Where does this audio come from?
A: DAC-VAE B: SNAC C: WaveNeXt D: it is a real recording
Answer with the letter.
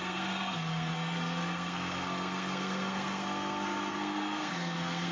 B